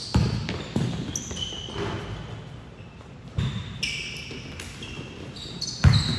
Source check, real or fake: real